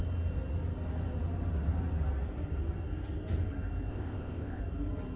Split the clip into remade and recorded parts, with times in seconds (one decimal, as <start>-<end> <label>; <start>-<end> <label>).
0.0-3.9 recorded; 3.9-4.6 remade; 4.6-5.2 recorded